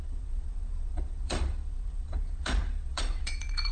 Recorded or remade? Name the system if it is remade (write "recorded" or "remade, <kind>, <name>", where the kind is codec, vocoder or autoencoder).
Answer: remade, vocoder, Vocos